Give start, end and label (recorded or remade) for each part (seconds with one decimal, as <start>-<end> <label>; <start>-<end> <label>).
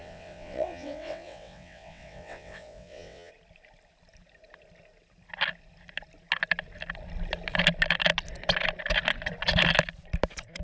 0.0-3.3 remade; 3.3-10.6 recorded